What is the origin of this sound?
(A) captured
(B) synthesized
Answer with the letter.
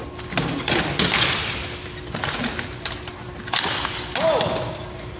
B